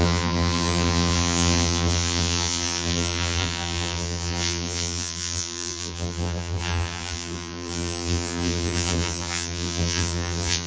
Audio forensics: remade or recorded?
remade